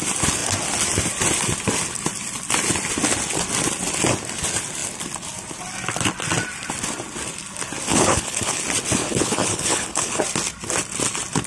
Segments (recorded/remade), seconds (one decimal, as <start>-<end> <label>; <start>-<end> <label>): 0.0-7.9 recorded; 7.9-8.6 remade; 8.6-9.0 recorded; 9.0-10.2 remade; 10.2-11.5 recorded